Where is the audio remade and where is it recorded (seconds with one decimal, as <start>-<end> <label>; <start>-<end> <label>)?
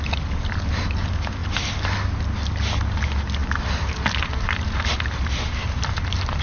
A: 0.0-6.4 recorded